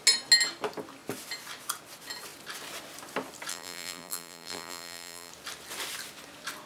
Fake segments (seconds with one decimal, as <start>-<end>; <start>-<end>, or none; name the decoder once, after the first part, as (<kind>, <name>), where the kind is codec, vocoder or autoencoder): 3.5-5.3 (vocoder, BigVGAN v2)